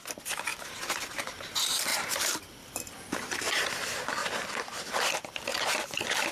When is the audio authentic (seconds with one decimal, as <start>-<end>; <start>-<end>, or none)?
0.0-1.9; 2.4-4.2; 4.9-6.3